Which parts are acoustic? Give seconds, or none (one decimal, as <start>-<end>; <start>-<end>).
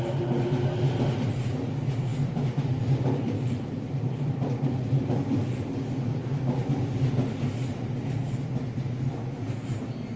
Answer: 0.0-2.1; 4.7-10.2